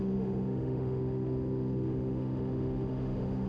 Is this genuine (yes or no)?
no